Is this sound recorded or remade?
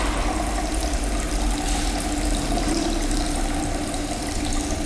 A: recorded